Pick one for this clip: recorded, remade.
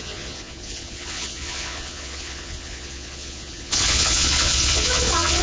remade